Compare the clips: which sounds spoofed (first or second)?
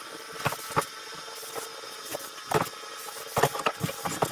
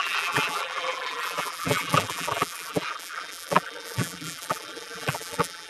second